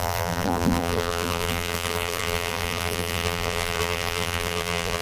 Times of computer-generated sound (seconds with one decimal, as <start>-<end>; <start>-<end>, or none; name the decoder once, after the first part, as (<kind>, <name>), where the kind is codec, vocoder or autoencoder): 0.0-5.0 (vocoder, BigVGAN v2)